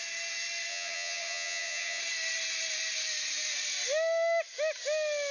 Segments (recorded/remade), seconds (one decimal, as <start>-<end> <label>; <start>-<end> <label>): 0.0-0.7 recorded; 0.7-2.0 remade; 2.0-5.3 recorded